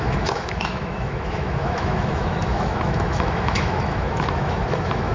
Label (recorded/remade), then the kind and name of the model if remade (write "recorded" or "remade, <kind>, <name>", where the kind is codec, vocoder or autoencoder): remade, autoencoder, DAC-VAE